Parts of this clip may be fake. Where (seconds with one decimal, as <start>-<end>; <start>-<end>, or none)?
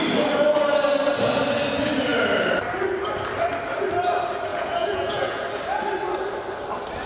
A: 4.5-5.4